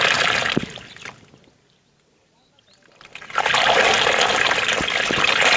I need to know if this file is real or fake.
real